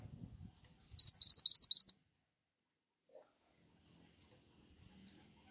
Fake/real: real